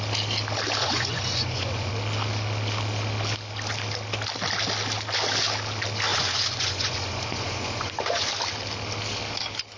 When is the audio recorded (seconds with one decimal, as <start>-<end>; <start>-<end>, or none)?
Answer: 0.0-0.8; 1.9-6.1; 8.3-9.8